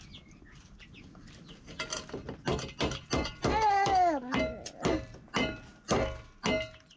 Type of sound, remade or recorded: recorded